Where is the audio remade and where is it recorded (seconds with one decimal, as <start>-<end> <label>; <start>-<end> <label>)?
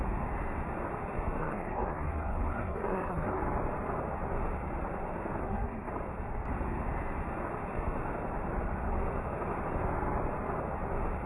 0.0-1.4 recorded; 1.4-3.4 remade; 3.4-5.4 recorded; 5.4-5.9 remade; 5.9-11.3 recorded